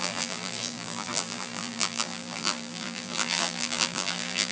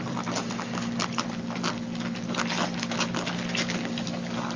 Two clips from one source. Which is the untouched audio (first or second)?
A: second